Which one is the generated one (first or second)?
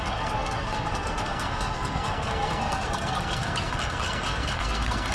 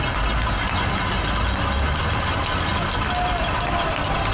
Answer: first